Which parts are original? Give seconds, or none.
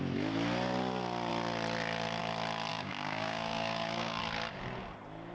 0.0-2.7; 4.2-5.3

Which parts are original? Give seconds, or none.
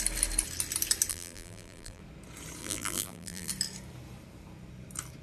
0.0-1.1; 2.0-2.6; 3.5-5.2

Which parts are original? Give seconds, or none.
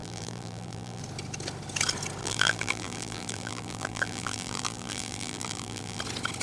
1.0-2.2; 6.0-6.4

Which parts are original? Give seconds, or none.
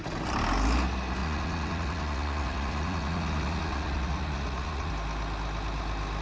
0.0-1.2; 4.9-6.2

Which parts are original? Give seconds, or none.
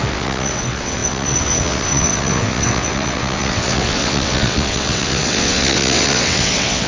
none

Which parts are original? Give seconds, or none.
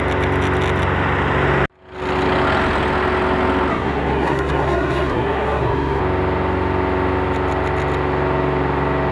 0.0-3.7; 6.0-9.1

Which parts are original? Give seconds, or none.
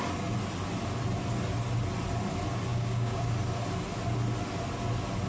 0.0-2.7; 3.3-5.3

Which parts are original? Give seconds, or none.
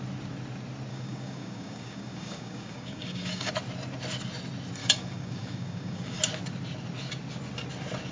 0.0-0.9; 3.5-4.8; 6.2-8.1